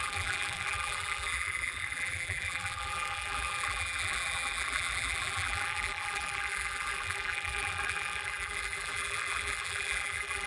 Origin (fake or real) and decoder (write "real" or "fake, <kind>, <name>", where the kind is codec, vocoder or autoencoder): fake, vocoder, BigVGAN v2